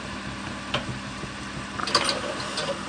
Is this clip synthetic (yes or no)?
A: no